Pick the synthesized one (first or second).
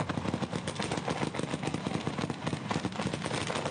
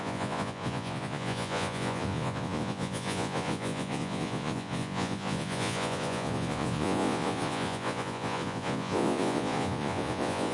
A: second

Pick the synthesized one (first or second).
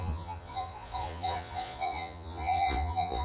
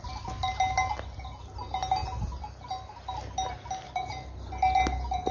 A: first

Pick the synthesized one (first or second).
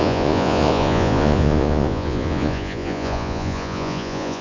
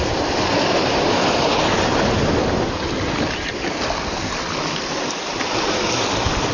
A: first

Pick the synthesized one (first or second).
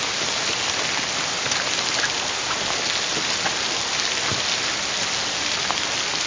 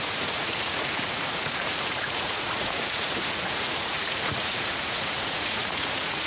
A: second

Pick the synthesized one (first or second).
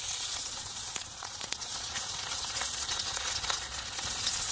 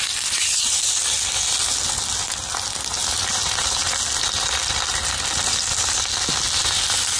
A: first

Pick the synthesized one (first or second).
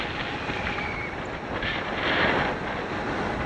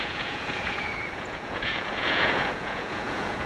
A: second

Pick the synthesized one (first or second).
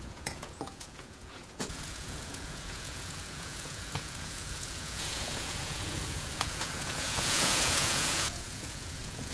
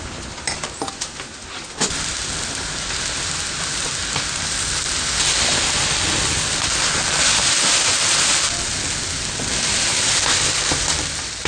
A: first